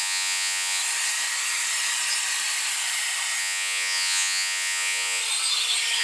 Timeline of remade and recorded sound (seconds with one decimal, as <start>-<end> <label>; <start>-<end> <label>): 0.0-0.8 remade; 0.8-3.4 recorded; 3.4-5.2 remade; 5.2-6.0 recorded